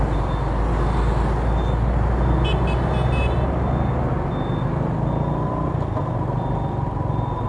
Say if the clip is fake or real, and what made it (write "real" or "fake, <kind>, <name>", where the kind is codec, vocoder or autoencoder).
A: real